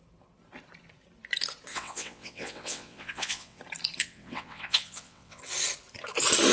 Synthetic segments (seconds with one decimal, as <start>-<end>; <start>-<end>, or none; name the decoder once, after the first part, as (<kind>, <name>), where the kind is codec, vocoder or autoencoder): 1.7-3.6 (vocoder, WaveNeXt); 4.0-5.4